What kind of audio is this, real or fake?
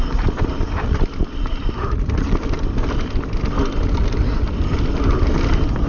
real